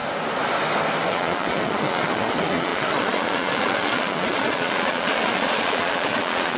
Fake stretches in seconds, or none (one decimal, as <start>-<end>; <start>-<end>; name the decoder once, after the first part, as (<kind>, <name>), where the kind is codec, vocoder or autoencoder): 1.1-6.6 (vocoder, Vocos)